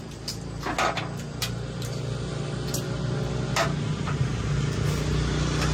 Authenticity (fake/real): real